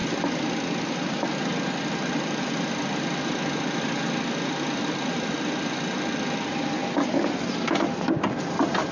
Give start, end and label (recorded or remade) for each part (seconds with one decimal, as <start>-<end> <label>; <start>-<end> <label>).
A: 0.0-8.9 recorded